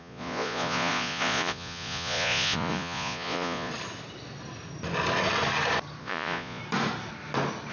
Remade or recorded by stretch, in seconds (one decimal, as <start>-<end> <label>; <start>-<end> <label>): 0.0-3.7 remade; 3.7-6.0 recorded; 6.0-6.6 remade; 6.6-7.7 recorded